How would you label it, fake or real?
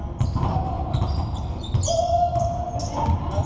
real